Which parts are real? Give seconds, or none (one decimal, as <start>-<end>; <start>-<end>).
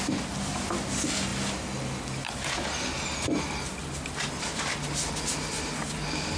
0.0-6.4